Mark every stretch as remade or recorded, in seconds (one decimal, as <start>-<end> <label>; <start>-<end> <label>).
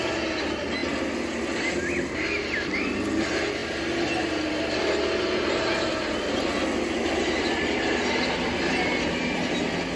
0.0-10.0 recorded